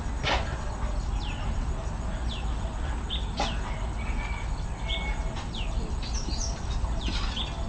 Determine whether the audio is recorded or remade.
recorded